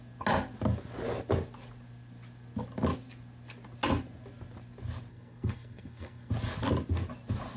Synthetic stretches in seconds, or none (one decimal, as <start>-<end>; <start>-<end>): 5.1-6.3